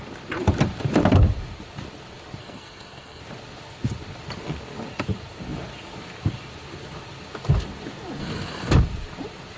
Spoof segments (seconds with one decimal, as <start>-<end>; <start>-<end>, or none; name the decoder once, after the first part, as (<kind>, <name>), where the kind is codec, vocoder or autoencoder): 2.4-3.2 (codec, SNAC); 8.2-8.7